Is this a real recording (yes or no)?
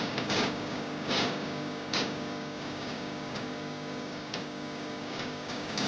no